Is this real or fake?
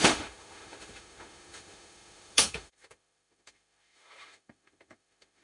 fake